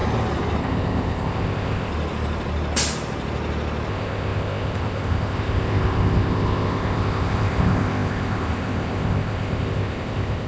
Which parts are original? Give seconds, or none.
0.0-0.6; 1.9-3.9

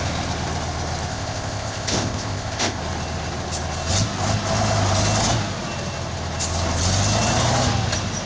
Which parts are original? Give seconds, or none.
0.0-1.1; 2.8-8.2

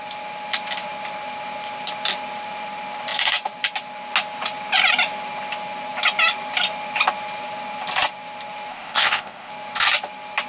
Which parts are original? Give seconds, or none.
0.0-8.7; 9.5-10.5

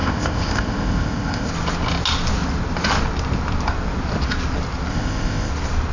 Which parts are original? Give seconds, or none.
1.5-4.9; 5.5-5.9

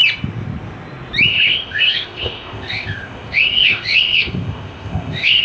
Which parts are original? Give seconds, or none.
0.0-1.3

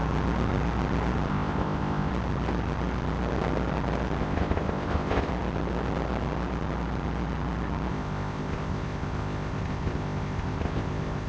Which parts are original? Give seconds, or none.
0.0-1.3; 2.1-4.2; 5.3-7.9

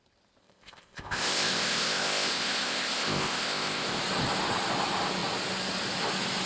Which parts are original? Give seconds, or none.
0.0-0.4; 4.0-6.5

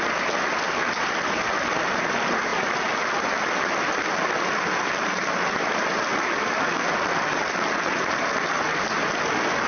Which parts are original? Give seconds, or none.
0.0-9.7